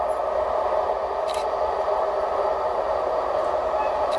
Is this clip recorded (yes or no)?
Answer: yes